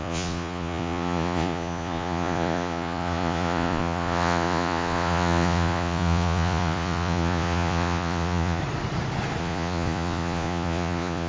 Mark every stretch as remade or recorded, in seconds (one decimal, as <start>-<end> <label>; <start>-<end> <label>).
0.0-8.6 remade; 8.6-9.4 recorded; 9.4-11.3 remade